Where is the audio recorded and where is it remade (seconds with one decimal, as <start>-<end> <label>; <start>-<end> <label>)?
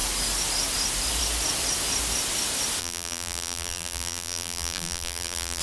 0.0-2.8 recorded; 2.8-5.6 remade